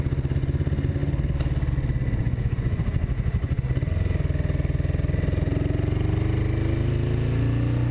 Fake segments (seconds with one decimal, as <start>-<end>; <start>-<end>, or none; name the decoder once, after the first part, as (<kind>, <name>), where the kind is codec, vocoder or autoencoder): 2.2-3.6 (vocoder, Vocos)